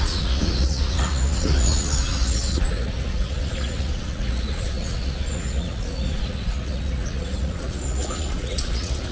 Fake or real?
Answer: fake